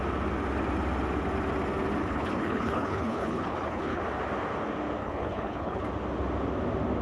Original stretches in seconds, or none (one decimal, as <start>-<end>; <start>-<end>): 0.0-2.0; 4.0-5.0; 5.8-7.0